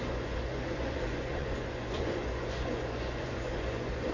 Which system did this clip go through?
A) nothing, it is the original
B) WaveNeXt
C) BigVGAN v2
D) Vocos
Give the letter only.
D